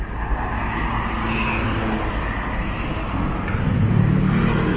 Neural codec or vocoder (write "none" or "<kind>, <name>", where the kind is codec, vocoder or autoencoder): none